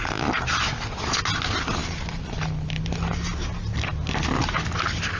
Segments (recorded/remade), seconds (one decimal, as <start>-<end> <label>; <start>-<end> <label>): 0.0-5.2 recorded